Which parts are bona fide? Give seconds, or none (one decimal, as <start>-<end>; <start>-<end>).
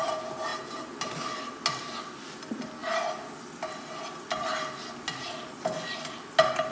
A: 0.0-6.7